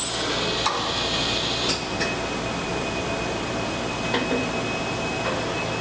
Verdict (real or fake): real